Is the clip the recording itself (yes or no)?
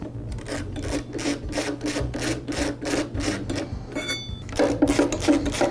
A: yes